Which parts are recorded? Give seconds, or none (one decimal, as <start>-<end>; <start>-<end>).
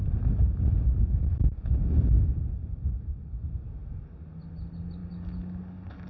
0.0-6.1